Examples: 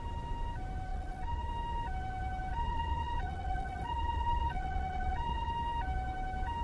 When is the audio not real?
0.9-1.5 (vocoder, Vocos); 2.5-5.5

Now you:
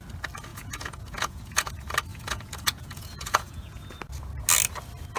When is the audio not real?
0.5-1.7 (vocoder, Vocos); 2.1-4.0

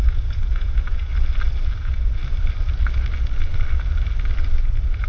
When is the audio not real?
0.0-1.1 (vocoder, Vocos); 1.8-2.2; 4.6-5.1

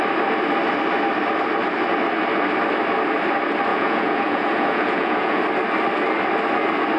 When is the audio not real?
3.7-5.4 (vocoder, Vocos)

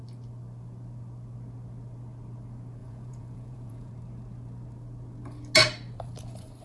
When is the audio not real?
2.8-3.9 (vocoder, Vocos)

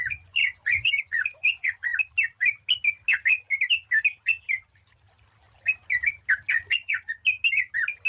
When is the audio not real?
0.0-1.9 (vocoder, Vocos); 6.5-7.2